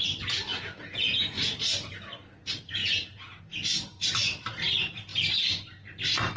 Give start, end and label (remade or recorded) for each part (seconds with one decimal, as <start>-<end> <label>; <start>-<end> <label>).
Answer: 0.0-0.5 recorded; 0.5-1.4 remade; 1.4-2.8 recorded; 2.8-3.4 remade; 3.4-6.4 recorded